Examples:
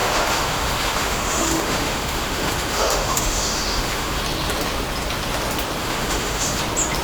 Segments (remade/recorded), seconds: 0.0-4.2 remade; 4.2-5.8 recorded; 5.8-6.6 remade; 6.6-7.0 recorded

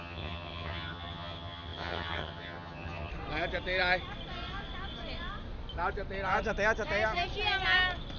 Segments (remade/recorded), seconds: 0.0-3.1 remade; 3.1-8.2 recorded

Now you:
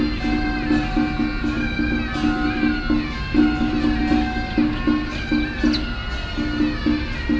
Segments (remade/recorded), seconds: 0.0-7.4 recorded